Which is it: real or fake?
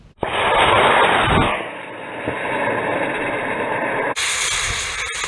real